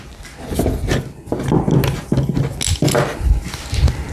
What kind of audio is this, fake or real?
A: real